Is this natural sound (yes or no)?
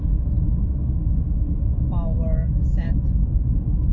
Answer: yes